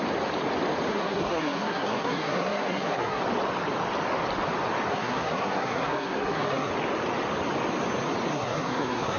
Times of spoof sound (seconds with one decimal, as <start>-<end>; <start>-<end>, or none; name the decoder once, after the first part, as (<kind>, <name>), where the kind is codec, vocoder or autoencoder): 0.9-3.2 (codec, SNAC); 4.9-6.7; 8.3-9.2

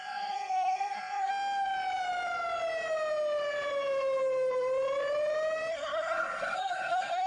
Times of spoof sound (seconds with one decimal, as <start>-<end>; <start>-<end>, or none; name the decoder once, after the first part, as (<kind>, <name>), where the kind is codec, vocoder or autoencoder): 0.0-1.3 (codec, SNAC); 5.7-7.3

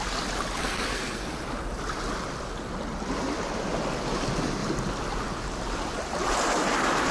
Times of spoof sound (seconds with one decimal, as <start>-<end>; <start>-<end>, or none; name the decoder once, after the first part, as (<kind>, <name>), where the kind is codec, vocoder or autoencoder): 0.6-1.3 (codec, SNAC)

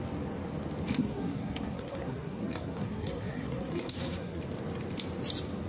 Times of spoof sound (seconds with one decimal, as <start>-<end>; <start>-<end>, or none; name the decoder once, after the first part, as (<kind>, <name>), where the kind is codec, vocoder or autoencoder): 1.0-4.4 (codec, SNAC)

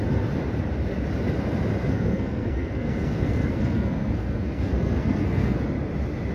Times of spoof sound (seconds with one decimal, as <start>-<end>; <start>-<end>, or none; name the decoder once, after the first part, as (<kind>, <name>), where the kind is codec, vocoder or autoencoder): 1.8-5.6 (codec, SNAC)

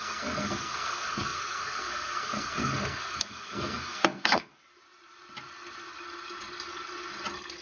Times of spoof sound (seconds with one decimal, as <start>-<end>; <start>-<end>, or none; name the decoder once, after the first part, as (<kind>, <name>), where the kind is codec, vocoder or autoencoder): 0.0-4.5 (codec, SNAC)